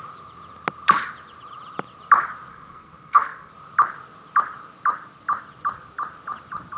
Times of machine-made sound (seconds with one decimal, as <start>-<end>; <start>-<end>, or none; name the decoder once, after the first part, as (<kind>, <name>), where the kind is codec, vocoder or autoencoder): 2.5-3.5 (codec, SNAC)